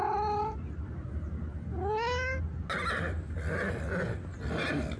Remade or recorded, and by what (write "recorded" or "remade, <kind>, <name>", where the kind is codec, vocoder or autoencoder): recorded